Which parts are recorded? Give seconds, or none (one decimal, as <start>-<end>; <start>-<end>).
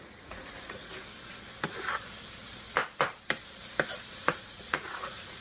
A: 0.9-4.1